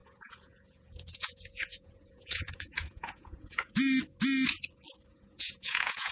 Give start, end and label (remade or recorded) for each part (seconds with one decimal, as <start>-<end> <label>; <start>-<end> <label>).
0.0-3.7 remade; 3.7-5.1 recorded; 5.1-6.1 remade